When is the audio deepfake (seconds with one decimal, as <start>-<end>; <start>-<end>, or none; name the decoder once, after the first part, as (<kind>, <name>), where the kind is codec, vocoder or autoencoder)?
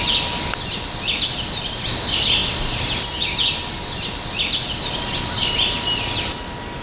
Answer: none